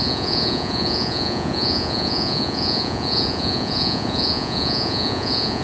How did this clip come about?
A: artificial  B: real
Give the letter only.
A